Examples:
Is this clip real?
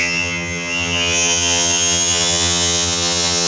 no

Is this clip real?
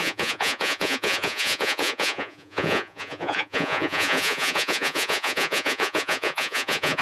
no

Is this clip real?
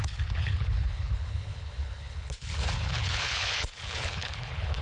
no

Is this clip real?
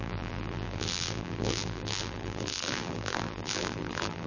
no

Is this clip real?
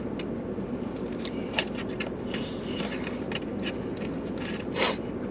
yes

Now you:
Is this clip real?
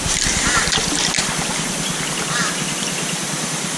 yes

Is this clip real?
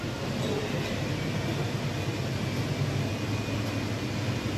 yes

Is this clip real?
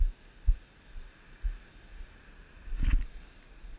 yes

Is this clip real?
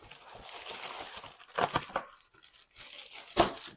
yes